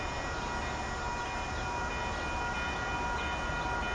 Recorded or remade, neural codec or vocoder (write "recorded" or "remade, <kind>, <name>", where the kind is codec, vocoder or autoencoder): recorded